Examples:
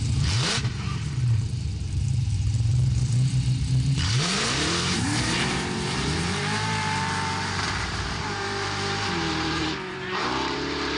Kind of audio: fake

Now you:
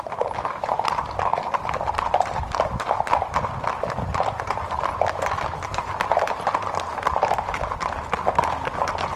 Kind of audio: real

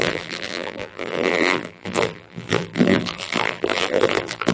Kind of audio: fake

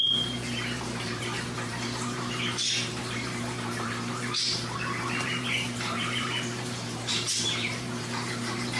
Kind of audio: fake